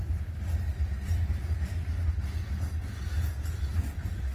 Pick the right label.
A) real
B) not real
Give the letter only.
A